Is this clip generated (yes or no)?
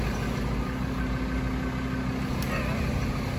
no